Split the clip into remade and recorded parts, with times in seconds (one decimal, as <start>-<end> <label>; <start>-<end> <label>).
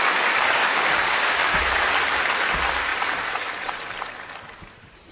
0.0-0.6 recorded; 0.6-1.6 remade; 1.6-5.1 recorded